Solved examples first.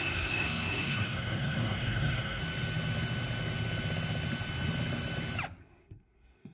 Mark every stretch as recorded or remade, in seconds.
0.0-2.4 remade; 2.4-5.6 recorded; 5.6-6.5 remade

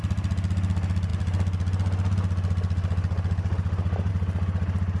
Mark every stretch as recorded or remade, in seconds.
0.0-5.0 recorded

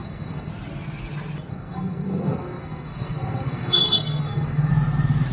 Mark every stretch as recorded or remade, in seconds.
0.0-0.5 remade; 0.5-1.5 recorded; 1.5-4.7 remade; 4.7-5.3 recorded

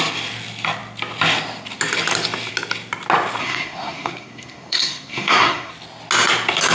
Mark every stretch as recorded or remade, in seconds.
0.0-3.4 recorded; 3.4-5.7 remade; 5.7-6.7 recorded

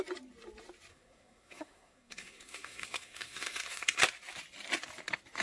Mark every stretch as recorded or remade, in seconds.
0.0-0.9 recorded; 0.9-4.0 remade; 4.0-5.4 recorded